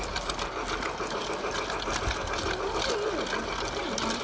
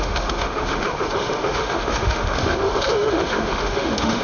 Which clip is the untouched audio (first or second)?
first